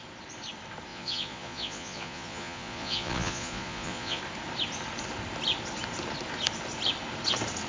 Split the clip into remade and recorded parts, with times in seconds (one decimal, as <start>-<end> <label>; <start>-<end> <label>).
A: 0.0-0.9 recorded; 0.9-4.2 remade; 4.2-7.7 recorded